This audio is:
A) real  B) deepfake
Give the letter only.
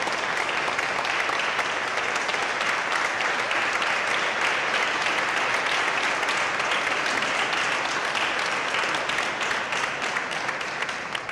A